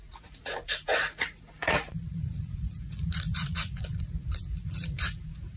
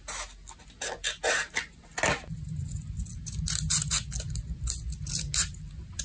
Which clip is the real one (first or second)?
second